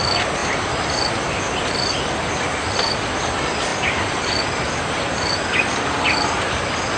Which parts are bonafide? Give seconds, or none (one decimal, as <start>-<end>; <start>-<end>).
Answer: 0.0-3.7; 4.8-7.0